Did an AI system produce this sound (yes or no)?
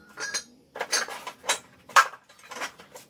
yes